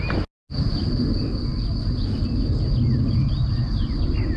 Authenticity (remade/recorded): recorded